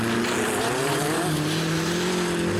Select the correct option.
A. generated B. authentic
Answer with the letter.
B